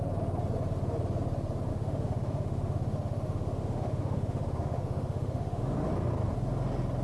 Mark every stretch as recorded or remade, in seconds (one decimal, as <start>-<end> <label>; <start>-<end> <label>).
0.0-1.7 recorded; 1.7-5.9 remade; 5.9-7.0 recorded